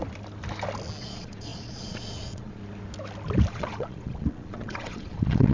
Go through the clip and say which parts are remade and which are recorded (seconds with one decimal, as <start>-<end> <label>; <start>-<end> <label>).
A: 0.0-1.0 recorded; 1.0-2.6 remade; 2.6-3.5 recorded; 3.5-5.5 remade